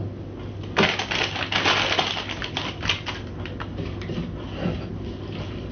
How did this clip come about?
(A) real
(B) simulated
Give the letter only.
A